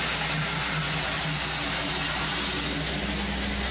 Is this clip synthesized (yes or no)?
no